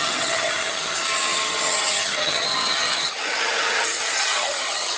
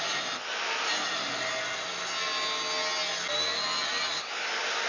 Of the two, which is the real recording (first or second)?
second